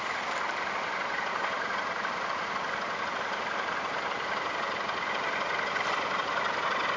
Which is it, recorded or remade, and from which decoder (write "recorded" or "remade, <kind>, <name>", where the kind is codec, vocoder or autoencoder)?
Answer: remade, vocoder, BigVGAN v2